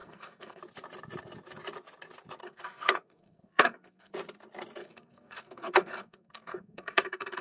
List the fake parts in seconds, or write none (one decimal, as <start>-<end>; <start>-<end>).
0.0-0.6; 2.4-4.1; 4.8-7.4